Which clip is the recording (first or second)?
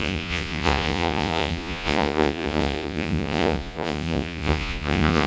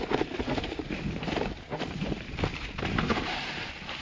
second